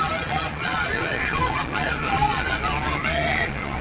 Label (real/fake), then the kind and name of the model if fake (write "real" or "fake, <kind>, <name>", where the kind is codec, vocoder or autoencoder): fake, vocoder, Vocos